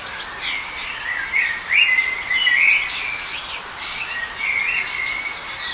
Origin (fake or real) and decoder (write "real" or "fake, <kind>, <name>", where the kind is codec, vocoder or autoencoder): real